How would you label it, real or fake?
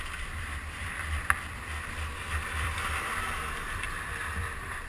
fake